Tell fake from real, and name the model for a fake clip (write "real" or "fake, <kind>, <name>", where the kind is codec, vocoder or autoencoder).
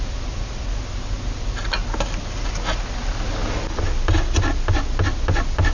real